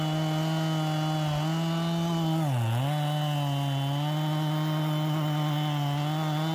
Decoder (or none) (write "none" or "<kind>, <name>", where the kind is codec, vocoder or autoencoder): none